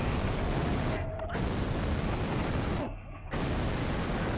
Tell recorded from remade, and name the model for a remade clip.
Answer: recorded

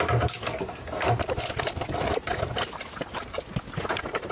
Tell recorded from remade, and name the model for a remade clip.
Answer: recorded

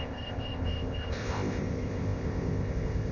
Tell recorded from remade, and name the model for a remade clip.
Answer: remade, codec, ZipCodec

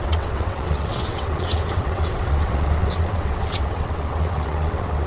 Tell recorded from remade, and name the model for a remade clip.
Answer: remade, vocoder, WaveNeXt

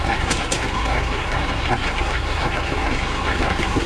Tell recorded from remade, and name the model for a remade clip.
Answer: remade, codec, SNAC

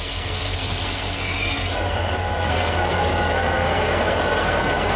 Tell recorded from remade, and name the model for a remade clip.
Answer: remade, codec, SNAC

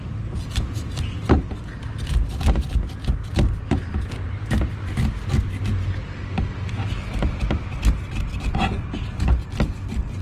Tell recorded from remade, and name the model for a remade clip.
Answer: recorded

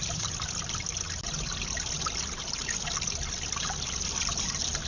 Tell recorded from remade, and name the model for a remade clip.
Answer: recorded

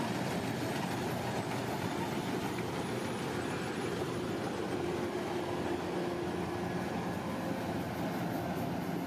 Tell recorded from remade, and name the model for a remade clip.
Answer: recorded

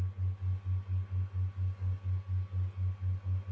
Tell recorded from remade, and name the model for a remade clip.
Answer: recorded